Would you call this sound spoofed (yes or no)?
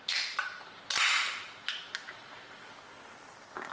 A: no